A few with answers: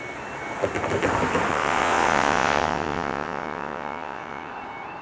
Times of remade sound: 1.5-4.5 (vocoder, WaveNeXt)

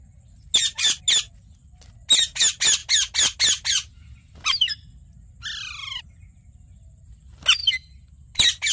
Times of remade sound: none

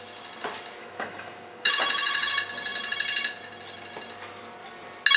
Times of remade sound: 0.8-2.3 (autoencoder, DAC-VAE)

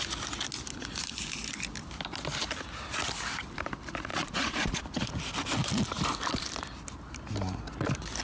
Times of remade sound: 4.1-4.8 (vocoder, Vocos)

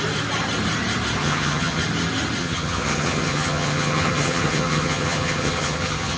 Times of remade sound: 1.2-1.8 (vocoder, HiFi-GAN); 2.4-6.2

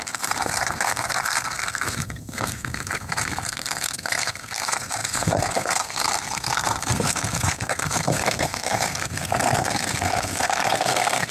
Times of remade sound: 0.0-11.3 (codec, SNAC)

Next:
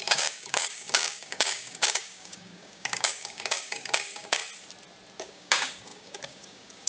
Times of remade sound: 0.0-4.4 (codec, DAC); 5.2-6.9

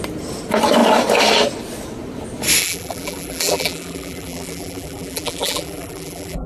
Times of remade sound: 2.6-6.5 (vocoder, BigVGAN v2)